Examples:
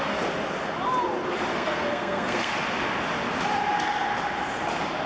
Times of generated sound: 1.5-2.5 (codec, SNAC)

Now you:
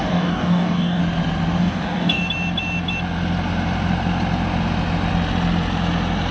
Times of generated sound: 0.0-1.0 (codec, DAC); 1.6-2.2

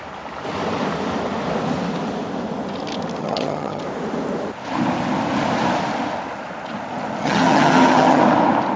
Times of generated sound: 3.2-3.8 (vocoder, HiFi-GAN); 7.2-8.2

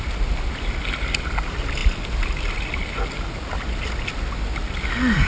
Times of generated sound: none